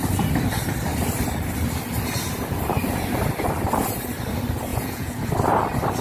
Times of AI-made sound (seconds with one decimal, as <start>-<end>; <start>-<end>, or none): 4.7-5.3